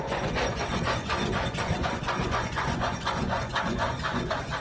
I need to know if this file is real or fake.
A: fake